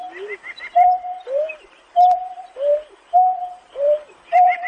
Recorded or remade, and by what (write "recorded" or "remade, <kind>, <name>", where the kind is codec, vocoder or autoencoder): remade, vocoder, BigVGAN v2